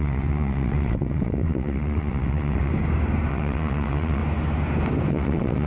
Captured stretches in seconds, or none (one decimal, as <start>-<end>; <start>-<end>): 2.7-3.3; 4.2-5.1